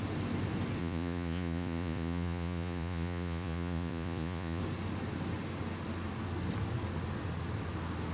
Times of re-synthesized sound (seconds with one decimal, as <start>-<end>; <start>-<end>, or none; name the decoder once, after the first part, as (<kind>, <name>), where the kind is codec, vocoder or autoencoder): 0.8-4.6 (vocoder, Vocos)